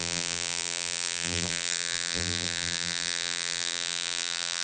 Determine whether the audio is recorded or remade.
remade